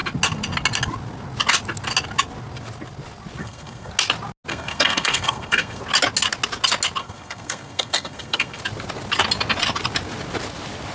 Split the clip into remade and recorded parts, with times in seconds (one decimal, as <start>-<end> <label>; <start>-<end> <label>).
0.0-3.4 recorded; 3.4-3.9 remade; 3.9-4.5 recorded; 4.5-5.8 remade; 5.8-7.0 recorded; 7.0-8.6 remade; 8.6-10.9 recorded